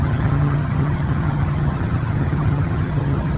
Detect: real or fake fake